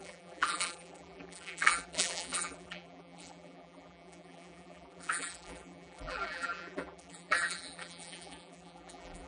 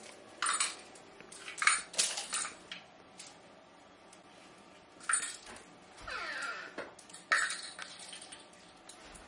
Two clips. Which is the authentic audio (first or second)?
second